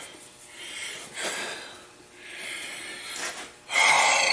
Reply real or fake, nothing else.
real